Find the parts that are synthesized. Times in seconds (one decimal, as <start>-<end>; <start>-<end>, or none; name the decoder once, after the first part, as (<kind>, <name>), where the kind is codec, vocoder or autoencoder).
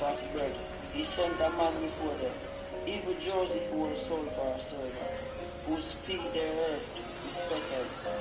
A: none